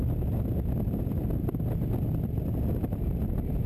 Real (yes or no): yes